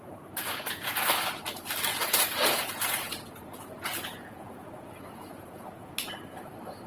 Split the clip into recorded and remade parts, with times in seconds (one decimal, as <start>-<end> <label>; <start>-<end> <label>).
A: 0.0-1.0 remade; 1.0-1.9 recorded; 1.9-5.9 remade; 5.9-6.9 recorded